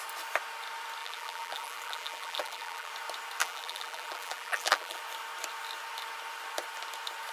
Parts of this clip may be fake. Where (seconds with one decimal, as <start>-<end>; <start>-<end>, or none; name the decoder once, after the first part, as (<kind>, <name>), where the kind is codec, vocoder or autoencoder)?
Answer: 1.0-2.9 (vocoder, BigVGAN v2); 3.4-5.0